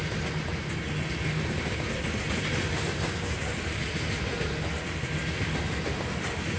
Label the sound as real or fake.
real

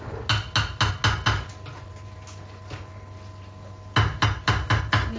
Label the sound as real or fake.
real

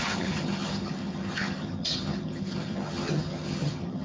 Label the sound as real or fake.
fake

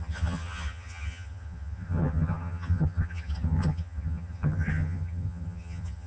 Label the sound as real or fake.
fake